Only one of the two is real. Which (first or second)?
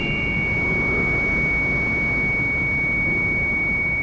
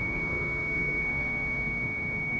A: first